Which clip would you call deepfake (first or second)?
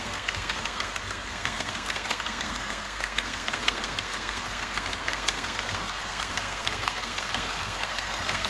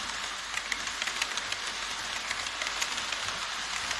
first